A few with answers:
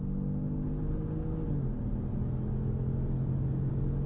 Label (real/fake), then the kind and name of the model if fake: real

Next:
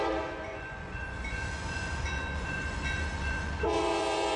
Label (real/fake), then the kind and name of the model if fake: fake, vocoder, Vocos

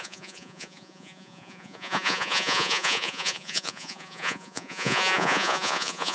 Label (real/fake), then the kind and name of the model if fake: fake, vocoder, Vocos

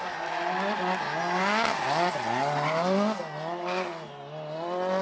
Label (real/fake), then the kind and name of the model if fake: real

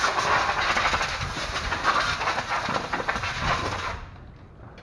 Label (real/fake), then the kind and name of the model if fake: real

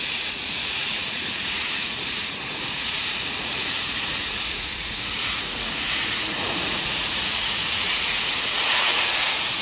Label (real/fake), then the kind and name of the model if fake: fake, vocoder, Vocos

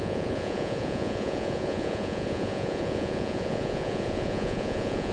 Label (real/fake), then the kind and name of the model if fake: fake, vocoder, Vocos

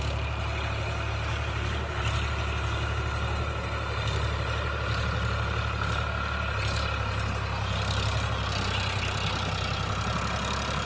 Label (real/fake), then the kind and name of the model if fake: real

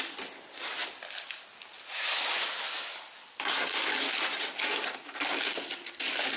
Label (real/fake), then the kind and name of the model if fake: real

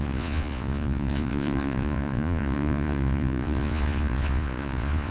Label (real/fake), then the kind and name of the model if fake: fake, vocoder, Vocos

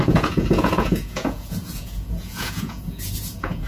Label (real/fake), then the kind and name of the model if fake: fake, vocoder, Vocos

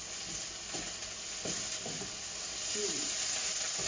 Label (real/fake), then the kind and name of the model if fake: real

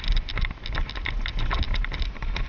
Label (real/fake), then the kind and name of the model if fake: real